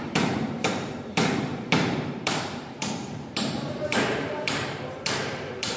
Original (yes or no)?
no